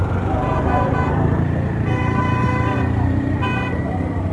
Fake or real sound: fake